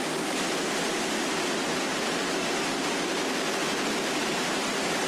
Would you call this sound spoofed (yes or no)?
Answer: no